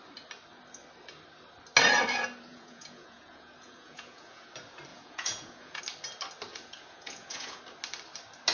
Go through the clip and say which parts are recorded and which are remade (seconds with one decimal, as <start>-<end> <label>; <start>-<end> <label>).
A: 0.0-2.5 recorded; 2.5-4.5 remade; 4.5-4.9 recorded; 4.9-5.8 remade; 5.8-6.5 recorded; 6.5-7.6 remade; 7.6-8.5 recorded

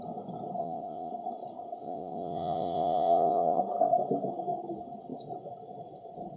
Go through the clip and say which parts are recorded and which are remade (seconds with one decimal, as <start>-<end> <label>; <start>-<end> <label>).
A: 0.0-0.6 recorded; 0.6-1.1 remade; 1.1-1.8 recorded; 1.8-3.6 remade; 3.6-6.4 recorded

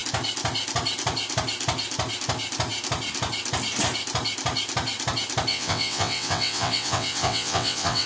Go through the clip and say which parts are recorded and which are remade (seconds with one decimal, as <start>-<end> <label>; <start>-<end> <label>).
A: 0.0-5.5 recorded; 5.5-8.1 remade

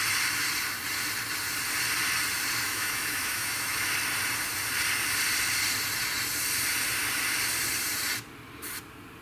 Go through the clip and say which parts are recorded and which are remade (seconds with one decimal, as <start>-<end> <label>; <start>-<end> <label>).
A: 0.0-2.6 recorded; 2.6-3.9 remade; 3.9-9.2 recorded

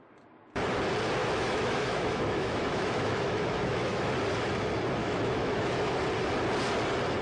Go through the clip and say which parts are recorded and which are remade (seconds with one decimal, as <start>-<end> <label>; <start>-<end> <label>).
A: 0.0-1.2 recorded; 1.2-4.1 remade; 4.1-5.0 recorded; 5.0-6.0 remade; 6.0-7.2 recorded

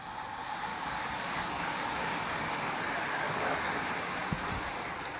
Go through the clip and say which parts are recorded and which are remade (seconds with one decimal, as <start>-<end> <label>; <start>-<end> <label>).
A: 0.0-0.7 recorded; 0.7-3.8 remade; 3.8-5.2 recorded

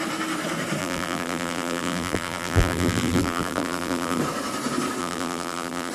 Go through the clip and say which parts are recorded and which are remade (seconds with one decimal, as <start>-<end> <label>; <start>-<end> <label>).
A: 0.0-0.8 recorded; 0.8-4.2 remade; 4.2-5.0 recorded; 5.0-5.9 remade

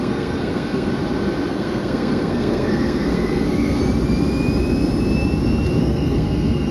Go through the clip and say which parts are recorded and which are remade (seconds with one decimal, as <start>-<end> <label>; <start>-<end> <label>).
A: 0.0-0.9 remade; 0.9-1.5 recorded; 1.5-3.8 remade; 3.8-5.8 recorded; 5.8-6.7 remade